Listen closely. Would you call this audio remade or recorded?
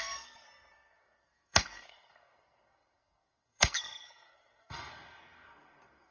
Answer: remade